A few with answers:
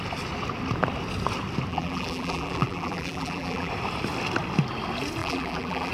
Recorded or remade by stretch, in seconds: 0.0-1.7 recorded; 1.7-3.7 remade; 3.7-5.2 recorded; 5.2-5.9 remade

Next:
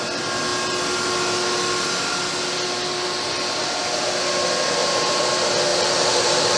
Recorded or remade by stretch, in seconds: 0.0-4.8 recorded; 4.8-5.3 remade; 5.3-5.7 recorded; 5.7-6.6 remade

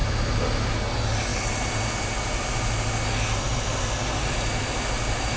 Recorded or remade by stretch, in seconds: 0.0-5.4 recorded

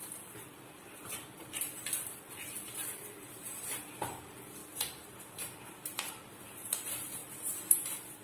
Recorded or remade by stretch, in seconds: 0.0-8.2 remade